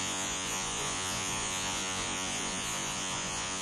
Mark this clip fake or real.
fake